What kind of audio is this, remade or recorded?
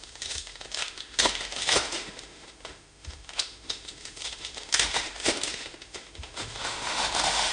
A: remade